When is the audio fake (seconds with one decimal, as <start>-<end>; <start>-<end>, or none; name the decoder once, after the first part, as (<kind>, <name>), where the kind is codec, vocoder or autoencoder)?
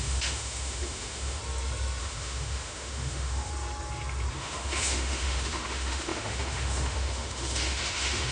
0.0-1.4 (autoencoder, DAC-VAE); 2.0-3.5; 4.3-8.3